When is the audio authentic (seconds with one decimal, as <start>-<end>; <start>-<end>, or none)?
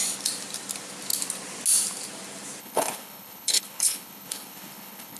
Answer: 0.0-2.6